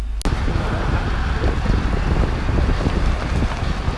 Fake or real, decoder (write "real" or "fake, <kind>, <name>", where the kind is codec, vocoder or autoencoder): real